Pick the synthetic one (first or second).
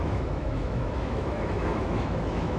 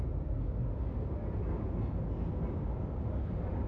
first